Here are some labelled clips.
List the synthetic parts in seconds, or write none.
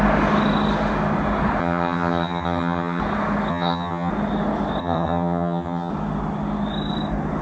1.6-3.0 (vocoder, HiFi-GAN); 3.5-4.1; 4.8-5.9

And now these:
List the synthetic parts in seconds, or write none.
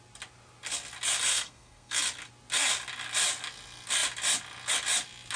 1.3-2.0 (codec, SNAC)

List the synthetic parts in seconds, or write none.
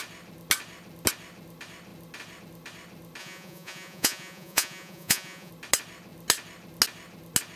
3.2-5.5 (vocoder, Vocos)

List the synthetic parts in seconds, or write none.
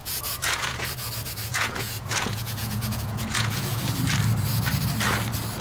0.0-1.1 (vocoder, Vocos); 1.5-3.8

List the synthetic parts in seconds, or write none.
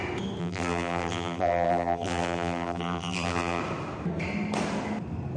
0.4-3.6 (vocoder, BigVGAN v2)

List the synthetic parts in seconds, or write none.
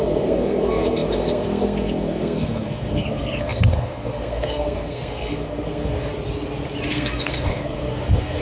0.0-6.1 (codec, SNAC); 6.9-8.4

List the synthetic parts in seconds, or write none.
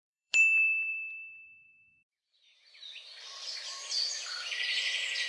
0.0-4.7 (vocoder, BigVGAN v2)